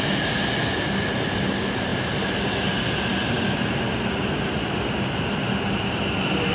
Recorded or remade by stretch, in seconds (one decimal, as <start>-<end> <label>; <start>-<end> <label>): 0.0-6.5 recorded